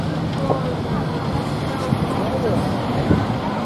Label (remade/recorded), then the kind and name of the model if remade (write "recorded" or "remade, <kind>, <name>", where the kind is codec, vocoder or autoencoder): recorded